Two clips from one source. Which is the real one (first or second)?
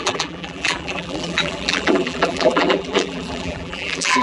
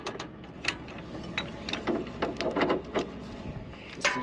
second